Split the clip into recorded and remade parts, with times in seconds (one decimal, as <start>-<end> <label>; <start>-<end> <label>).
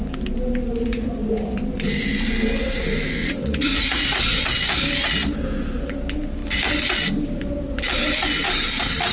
0.0-0.9 recorded; 0.9-1.5 remade; 1.5-3.2 recorded; 3.2-4.4 remade; 4.4-9.1 recorded